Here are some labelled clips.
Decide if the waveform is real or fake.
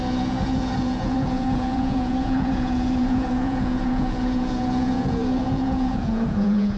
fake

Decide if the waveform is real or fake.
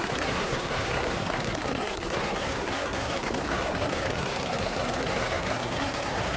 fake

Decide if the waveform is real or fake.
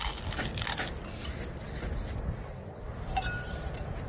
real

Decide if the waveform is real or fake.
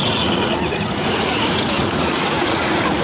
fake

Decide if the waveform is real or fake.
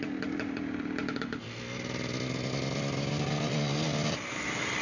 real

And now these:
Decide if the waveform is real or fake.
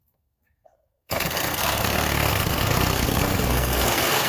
fake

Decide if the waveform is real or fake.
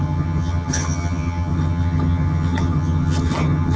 fake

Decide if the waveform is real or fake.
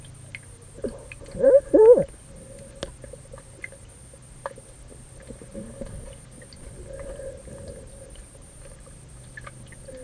real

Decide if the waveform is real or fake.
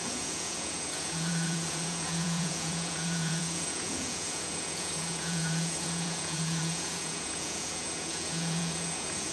fake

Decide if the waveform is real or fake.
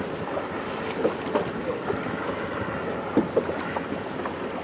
real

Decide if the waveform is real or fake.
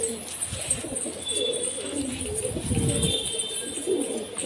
real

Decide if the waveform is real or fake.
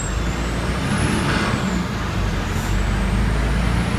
real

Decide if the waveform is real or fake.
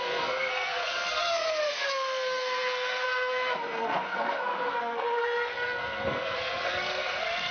fake